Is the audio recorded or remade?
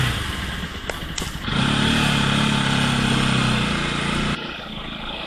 recorded